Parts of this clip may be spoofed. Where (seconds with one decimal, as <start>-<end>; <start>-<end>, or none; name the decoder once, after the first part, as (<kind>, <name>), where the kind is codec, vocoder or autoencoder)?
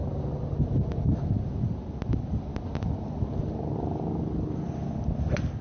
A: none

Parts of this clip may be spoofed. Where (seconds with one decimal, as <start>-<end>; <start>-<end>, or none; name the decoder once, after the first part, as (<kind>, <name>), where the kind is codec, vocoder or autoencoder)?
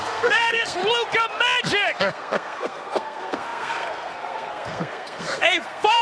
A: 0.0-0.8 (codec, SNAC); 2.0-6.0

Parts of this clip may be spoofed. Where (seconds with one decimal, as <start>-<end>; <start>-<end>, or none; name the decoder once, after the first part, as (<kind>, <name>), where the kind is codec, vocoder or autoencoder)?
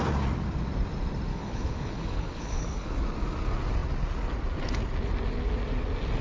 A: 1.3-2.9 (codec, HILCodec)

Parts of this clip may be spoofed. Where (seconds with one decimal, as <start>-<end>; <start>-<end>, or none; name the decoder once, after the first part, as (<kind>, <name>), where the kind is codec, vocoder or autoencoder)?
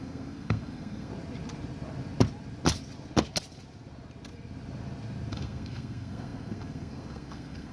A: 0.0-1.1 (codec, SNAC); 5.3-7.7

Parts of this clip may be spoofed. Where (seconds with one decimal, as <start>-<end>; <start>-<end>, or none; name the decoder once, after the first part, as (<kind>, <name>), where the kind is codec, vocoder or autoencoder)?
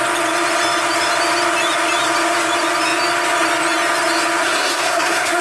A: 4.4-5.4 (codec, SNAC)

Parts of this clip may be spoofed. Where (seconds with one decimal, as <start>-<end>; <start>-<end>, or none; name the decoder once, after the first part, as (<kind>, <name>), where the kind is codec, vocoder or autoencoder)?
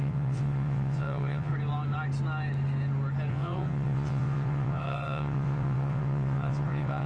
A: 0.0-1.5 (vocoder, WaveNeXt); 3.3-7.1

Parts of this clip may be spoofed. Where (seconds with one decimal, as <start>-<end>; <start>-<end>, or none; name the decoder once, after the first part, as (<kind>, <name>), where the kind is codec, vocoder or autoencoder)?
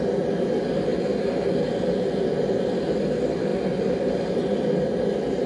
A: none